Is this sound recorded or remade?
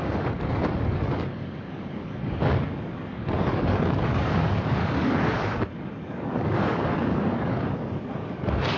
remade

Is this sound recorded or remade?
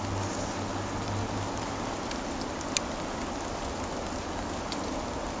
recorded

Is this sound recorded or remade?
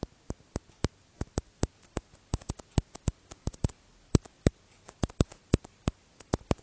recorded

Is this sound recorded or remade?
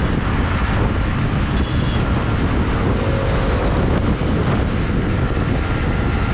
recorded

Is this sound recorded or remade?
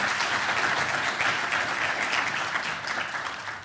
recorded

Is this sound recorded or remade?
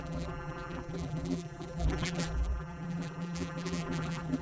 remade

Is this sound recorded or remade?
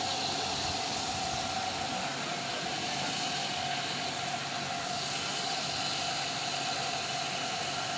recorded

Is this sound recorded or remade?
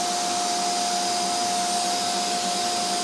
recorded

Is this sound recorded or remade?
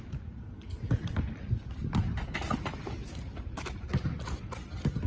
remade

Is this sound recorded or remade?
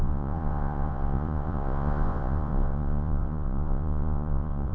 remade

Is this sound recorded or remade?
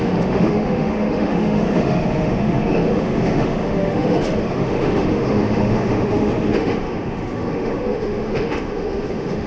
remade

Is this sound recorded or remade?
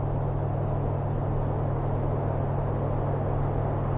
recorded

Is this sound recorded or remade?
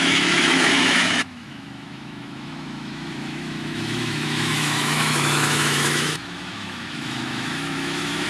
remade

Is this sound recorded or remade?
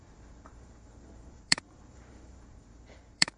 remade